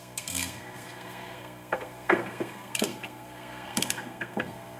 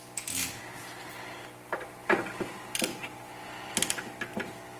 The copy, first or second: first